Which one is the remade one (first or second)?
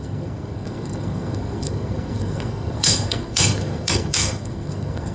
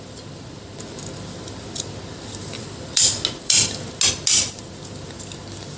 first